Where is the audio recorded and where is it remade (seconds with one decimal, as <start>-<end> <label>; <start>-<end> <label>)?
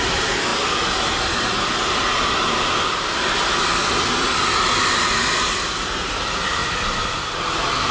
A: 0.0-7.9 recorded